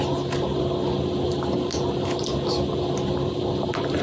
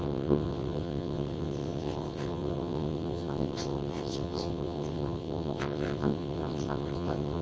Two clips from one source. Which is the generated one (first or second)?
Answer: second